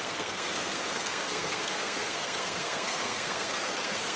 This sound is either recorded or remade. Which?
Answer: remade